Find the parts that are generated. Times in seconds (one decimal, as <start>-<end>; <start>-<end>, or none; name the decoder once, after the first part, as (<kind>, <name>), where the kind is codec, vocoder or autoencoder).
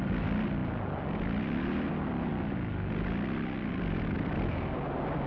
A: none